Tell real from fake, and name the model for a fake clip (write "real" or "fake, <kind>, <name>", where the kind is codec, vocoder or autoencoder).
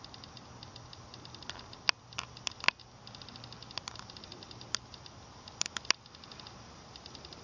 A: real